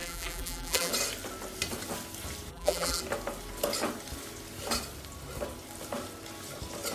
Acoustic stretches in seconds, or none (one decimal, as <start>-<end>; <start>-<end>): 0.9-2.5; 3.0-6.9